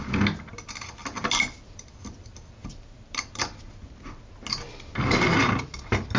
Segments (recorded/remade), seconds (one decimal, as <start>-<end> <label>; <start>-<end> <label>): 0.0-1.0 recorded; 1.0-3.4 remade; 3.4-6.2 recorded